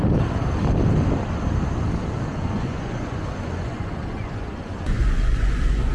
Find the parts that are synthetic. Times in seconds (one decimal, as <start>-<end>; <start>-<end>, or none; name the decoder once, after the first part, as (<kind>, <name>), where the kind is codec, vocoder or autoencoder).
2.3-5.9 (vocoder, Vocos)